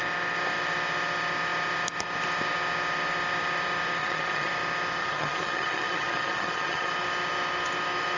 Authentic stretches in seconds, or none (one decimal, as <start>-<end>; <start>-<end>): 0.0-4.0; 4.5-5.0; 6.9-8.2